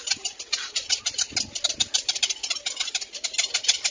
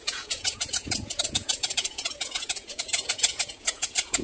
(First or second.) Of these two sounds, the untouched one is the first